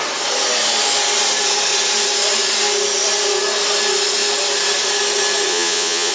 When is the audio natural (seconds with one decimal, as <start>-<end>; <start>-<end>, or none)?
0.0-5.5